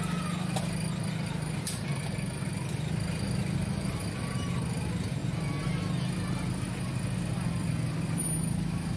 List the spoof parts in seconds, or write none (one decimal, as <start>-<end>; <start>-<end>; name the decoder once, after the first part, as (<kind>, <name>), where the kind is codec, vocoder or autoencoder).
none